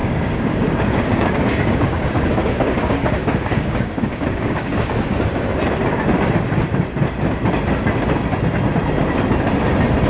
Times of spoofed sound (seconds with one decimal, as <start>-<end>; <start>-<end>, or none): 0.0-4.9